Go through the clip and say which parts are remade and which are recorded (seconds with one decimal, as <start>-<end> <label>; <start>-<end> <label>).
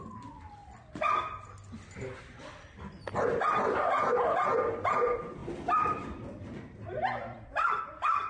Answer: 0.0-5.4 recorded; 5.4-7.8 remade; 7.8-8.3 recorded